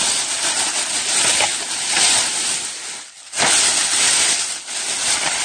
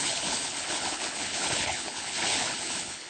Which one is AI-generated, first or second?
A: second